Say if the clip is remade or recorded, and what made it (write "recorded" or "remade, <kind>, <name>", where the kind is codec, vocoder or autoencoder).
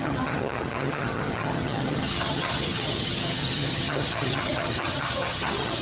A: remade, vocoder, HiFi-GAN